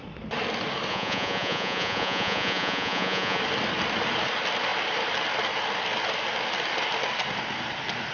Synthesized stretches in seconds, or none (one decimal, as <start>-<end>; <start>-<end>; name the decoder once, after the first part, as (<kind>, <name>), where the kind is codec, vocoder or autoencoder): 0.9-3.4 (vocoder, Vocos)